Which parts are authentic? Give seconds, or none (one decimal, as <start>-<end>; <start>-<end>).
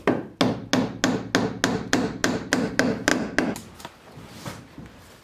0.0-5.2